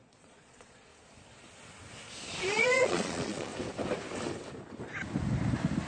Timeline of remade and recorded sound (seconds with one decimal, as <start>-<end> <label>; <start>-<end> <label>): 0.0-0.9 remade; 0.9-2.5 recorded; 2.5-3.5 remade; 3.5-5.9 recorded